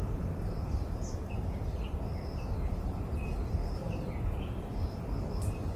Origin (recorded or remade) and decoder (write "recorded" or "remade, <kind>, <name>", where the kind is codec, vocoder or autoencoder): recorded